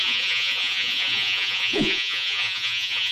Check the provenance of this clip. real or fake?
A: fake